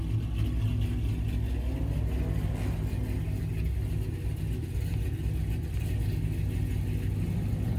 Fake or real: real